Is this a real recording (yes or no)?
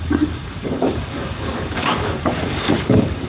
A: no